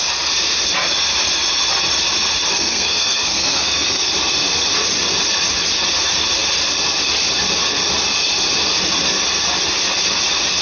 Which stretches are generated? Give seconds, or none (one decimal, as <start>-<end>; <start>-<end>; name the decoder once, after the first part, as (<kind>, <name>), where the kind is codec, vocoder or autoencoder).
2.5-4.1 (codec, SNAC)